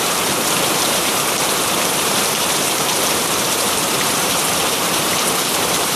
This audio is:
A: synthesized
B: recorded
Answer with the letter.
A